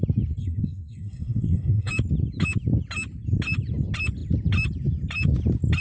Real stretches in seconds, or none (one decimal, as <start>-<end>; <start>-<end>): 0.0-0.4; 1.9-5.8